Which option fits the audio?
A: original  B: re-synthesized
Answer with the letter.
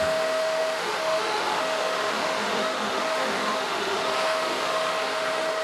B